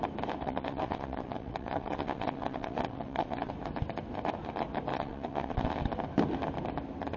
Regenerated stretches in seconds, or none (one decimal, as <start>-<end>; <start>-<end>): 0.4-3.5; 4.9-5.7